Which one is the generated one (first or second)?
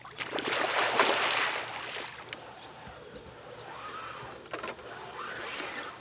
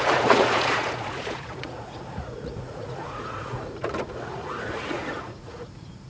second